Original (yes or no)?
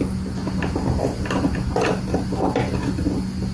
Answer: yes